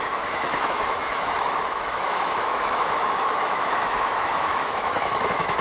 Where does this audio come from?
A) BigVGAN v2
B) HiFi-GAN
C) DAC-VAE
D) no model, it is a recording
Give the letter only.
C